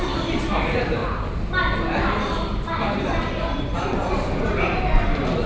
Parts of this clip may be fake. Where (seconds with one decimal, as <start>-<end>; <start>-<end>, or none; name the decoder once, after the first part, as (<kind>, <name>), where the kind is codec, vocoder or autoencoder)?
none